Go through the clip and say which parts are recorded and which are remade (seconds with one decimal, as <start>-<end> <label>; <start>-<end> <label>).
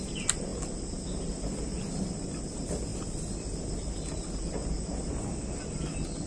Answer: 0.0-6.3 recorded